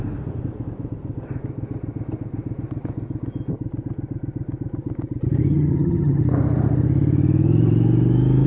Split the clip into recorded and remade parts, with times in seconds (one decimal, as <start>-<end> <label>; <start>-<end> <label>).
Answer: 0.0-5.5 recorded; 5.5-6.2 remade; 6.2-8.5 recorded